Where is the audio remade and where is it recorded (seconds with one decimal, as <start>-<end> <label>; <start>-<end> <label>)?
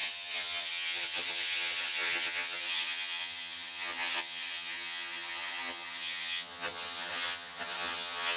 0.0-8.4 remade